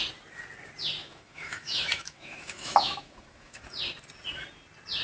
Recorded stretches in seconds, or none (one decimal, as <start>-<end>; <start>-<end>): 0.0-1.0; 3.6-5.0

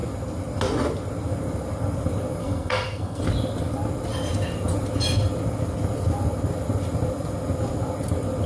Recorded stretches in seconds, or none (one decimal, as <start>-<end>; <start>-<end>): 0.0-2.4; 3.2-8.5